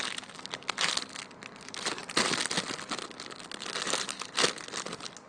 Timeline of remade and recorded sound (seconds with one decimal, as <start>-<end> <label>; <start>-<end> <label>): 0.0-5.3 recorded